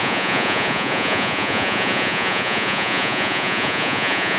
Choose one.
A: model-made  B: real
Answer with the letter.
A